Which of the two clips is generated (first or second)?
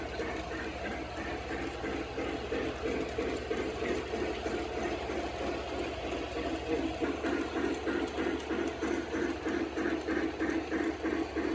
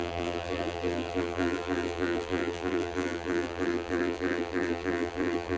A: second